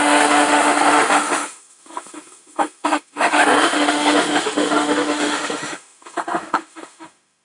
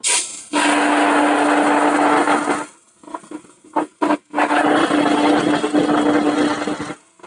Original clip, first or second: second